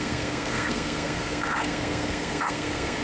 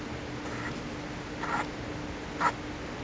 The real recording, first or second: second